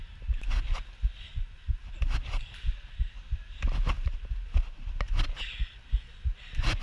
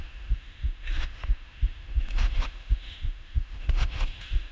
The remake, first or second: second